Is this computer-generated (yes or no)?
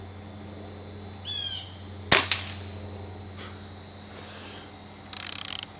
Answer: no